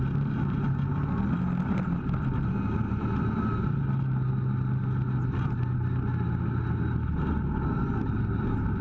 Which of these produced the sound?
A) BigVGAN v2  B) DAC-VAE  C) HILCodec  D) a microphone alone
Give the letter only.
D